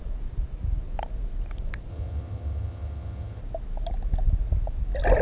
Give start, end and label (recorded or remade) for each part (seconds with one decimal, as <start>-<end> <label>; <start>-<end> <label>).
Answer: 0.0-1.9 recorded; 1.9-3.4 remade; 3.4-5.2 recorded